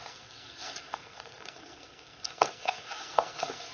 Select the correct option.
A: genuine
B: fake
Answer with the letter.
B